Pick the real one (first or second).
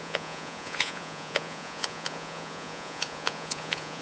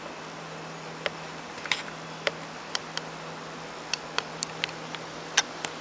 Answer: second